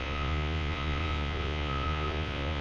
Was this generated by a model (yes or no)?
yes